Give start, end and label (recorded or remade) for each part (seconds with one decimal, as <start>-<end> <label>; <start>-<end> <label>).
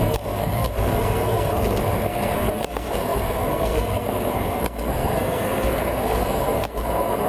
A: 0.0-7.3 remade